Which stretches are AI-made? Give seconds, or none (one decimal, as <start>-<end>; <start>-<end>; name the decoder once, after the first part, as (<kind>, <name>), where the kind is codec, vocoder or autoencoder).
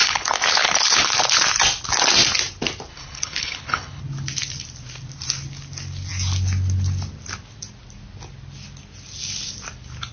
0.0-1.2 (codec, HILCodec); 2.9-4.0